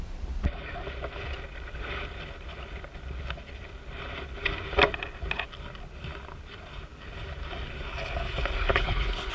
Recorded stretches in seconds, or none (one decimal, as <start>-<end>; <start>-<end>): 0.0-8.7